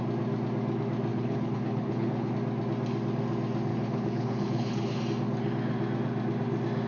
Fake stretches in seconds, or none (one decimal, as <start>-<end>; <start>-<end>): 1.1-2.3; 3.7-5.0